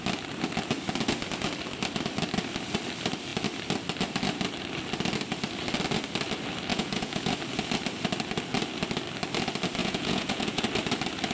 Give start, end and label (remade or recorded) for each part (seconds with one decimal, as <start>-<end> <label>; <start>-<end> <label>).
0.0-6.7 recorded; 6.7-7.3 remade; 7.3-9.8 recorded; 9.8-10.6 remade; 10.6-11.3 recorded